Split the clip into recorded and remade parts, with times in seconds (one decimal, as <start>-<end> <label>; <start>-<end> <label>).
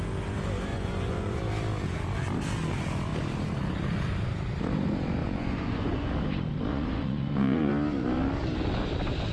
0.0-0.7 recorded; 0.7-1.4 remade; 1.4-5.2 recorded; 5.2-6.1 remade; 6.1-6.7 recorded; 6.7-7.7 remade; 7.7-9.3 recorded